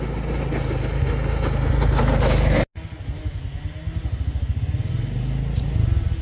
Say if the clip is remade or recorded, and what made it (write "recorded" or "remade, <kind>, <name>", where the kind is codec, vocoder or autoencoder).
recorded